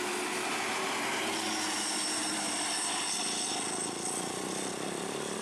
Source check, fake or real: real